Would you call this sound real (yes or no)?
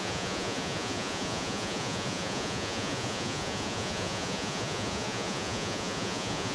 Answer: no